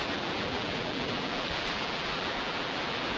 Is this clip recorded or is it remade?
remade